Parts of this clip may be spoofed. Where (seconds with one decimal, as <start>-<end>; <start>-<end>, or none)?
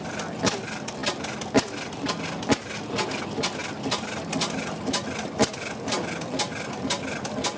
none